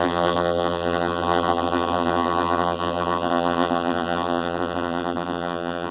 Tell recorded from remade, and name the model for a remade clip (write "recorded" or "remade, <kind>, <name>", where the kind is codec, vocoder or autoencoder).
remade, vocoder, BigVGAN v2